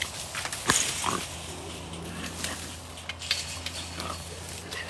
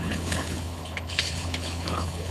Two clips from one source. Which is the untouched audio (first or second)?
first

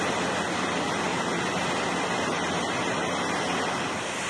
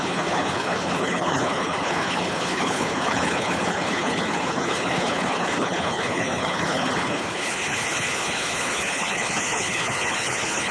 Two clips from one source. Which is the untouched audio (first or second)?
first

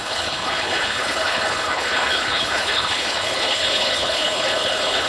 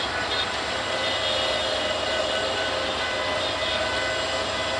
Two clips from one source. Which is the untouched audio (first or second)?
second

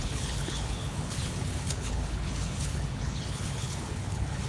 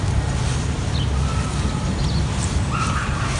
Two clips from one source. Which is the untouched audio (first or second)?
second